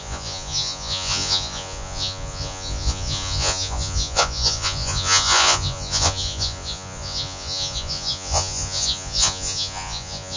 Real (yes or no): no